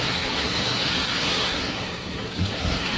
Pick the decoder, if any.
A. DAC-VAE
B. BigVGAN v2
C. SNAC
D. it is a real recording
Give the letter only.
C